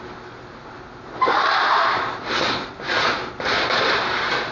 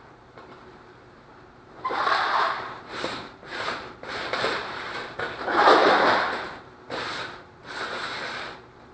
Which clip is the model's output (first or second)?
second